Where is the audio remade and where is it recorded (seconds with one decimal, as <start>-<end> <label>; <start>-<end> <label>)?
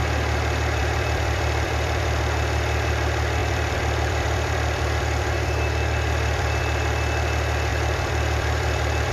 0.0-0.8 recorded; 0.8-2.2 remade; 2.2-3.4 recorded; 3.4-6.6 remade; 6.6-7.7 recorded; 7.7-9.1 remade